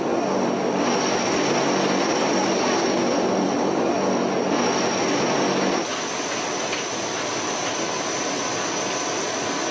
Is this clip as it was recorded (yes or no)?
yes